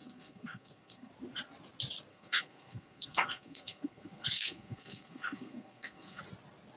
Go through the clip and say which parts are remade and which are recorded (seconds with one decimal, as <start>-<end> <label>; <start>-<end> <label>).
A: 0.0-1.1 remade; 1.1-2.1 recorded; 2.1-6.2 remade; 6.2-6.8 recorded